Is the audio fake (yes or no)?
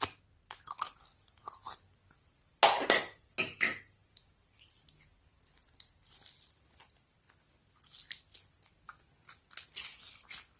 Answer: no